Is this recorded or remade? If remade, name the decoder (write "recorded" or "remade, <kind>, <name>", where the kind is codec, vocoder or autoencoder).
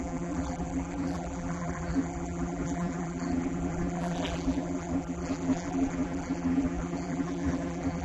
remade, vocoder, BigVGAN v2